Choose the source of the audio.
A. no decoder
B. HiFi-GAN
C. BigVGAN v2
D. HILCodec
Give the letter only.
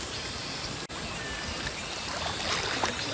C